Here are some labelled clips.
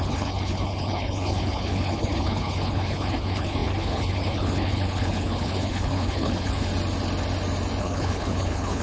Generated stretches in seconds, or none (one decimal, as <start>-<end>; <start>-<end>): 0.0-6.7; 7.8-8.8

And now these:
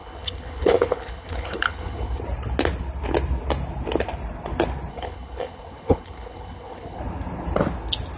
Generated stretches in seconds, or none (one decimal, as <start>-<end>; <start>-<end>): 0.0-2.2; 4.9-7.0

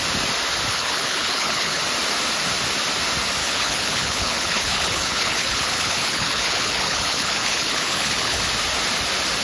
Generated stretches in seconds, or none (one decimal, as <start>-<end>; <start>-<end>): 0.7-1.8; 3.4-8.4

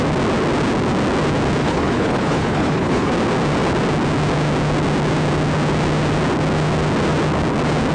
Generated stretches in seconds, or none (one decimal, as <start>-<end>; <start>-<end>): 1.6-3.1